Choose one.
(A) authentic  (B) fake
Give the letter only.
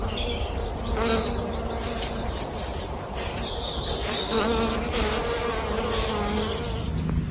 A